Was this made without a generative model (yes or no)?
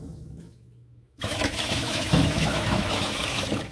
no